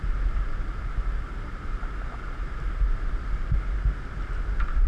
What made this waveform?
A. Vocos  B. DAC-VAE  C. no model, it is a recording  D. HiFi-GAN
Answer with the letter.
C